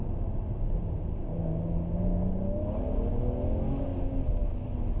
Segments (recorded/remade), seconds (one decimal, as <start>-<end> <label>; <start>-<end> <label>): 0.0-5.0 recorded